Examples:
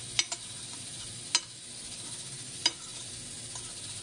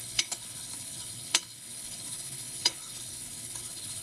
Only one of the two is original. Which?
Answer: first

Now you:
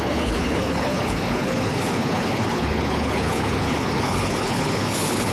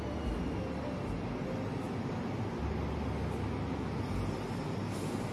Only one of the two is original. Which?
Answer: second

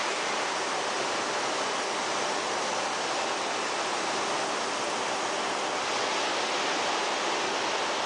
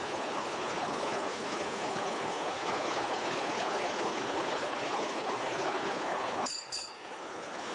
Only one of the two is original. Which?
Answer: first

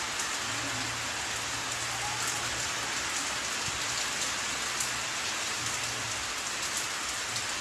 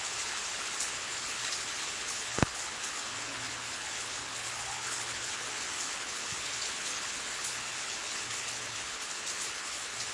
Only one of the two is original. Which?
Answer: first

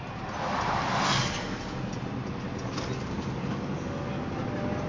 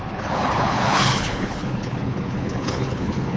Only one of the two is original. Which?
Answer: first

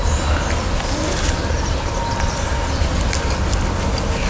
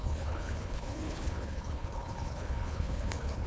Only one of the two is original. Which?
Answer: first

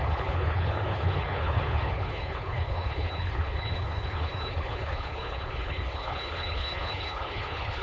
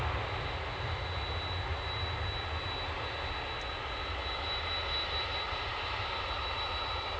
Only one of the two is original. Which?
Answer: second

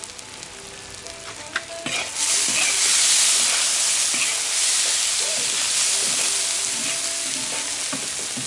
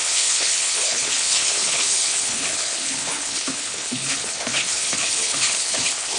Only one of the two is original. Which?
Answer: first